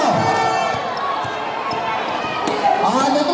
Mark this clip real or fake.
real